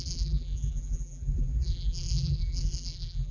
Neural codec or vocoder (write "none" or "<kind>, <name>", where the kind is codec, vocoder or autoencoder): vocoder, BigVGAN v2